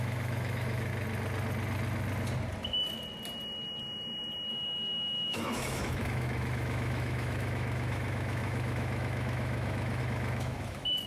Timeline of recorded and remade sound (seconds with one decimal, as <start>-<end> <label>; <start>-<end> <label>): 0.0-0.9 remade; 0.9-4.5 recorded; 4.5-11.1 remade